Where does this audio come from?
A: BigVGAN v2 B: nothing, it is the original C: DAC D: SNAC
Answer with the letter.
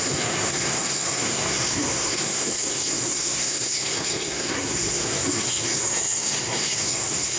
D